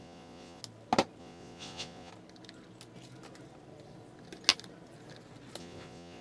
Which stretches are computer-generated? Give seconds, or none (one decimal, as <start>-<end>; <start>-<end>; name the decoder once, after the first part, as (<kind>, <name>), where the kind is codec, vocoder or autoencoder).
0.0-0.6 (vocoder, Vocos); 1.2-2.1; 5.6-6.2